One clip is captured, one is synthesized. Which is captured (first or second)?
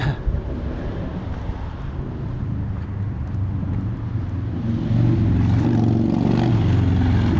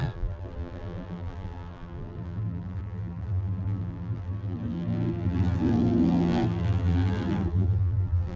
first